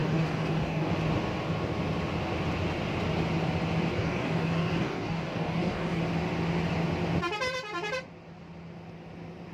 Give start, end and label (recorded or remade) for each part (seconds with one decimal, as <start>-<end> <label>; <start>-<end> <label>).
0.0-0.9 remade; 0.9-3.9 recorded; 3.9-6.0 remade; 6.0-9.5 recorded

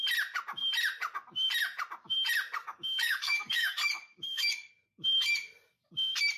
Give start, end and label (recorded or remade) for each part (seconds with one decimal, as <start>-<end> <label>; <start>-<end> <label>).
0.0-2.6 recorded; 2.6-4.7 remade; 4.7-6.4 recorded

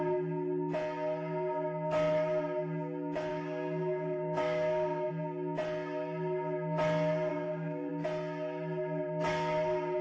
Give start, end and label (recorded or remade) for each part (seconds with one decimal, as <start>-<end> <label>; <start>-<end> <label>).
0.0-3.3 recorded; 3.3-5.1 remade; 5.1-7.3 recorded; 7.3-7.9 remade; 7.9-10.0 recorded

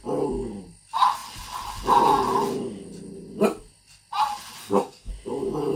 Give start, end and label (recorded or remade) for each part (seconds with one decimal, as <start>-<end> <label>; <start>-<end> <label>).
0.0-4.6 recorded; 4.6-5.1 remade; 5.1-5.8 recorded

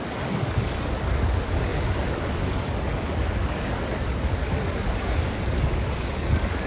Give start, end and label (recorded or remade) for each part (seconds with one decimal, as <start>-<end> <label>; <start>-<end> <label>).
0.0-6.7 remade

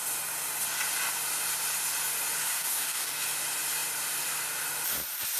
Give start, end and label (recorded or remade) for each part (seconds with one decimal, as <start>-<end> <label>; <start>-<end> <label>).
0.0-2.4 recorded; 2.4-3.1 remade; 3.1-5.4 recorded

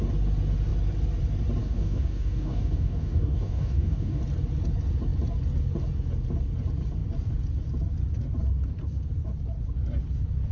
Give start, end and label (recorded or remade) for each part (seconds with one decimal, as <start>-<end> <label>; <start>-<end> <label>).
0.0-1.6 recorded; 1.6-4.2 remade; 4.2-10.5 recorded